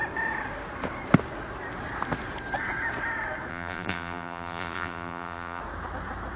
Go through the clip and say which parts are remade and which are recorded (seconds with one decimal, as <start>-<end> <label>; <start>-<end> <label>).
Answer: 0.0-3.5 recorded; 3.5-5.6 remade; 5.6-6.4 recorded

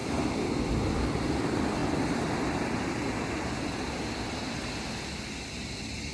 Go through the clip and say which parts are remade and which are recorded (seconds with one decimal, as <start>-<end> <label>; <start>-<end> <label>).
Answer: 0.0-6.1 recorded

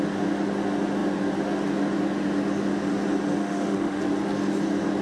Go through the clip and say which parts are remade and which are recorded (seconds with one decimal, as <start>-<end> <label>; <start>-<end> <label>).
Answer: 0.0-3.4 recorded; 3.4-4.0 remade; 4.0-5.0 recorded

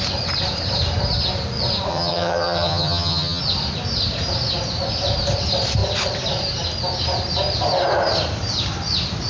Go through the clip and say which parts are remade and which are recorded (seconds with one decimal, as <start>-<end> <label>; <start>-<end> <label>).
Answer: 0.0-1.9 recorded; 1.9-3.4 remade; 3.4-9.3 recorded